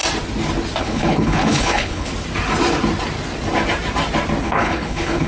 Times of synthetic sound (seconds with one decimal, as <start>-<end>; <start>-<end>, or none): 0.8-2.1; 4.4-5.3